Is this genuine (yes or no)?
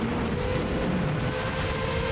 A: yes